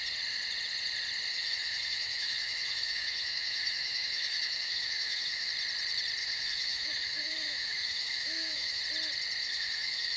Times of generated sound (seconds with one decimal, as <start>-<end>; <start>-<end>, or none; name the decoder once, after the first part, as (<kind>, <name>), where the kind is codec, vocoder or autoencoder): 1.3-5.5 (autoencoder, DAC-VAE); 6.2-8.8; 9.4-10.2